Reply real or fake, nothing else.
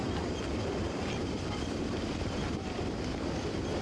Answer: fake